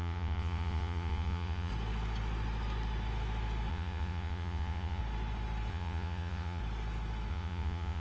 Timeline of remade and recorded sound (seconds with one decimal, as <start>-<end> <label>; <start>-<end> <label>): 0.0-1.7 remade; 1.7-3.7 recorded; 3.7-5.0 remade; 5.0-5.7 recorded; 5.7-6.6 remade; 6.6-7.3 recorded; 7.3-8.0 remade